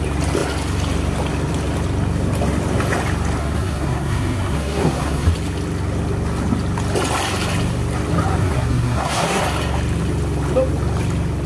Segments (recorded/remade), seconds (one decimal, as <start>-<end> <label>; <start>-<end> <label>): 0.0-3.4 recorded; 3.4-5.3 remade; 5.3-8.4 recorded; 8.4-9.4 remade; 9.4-11.5 recorded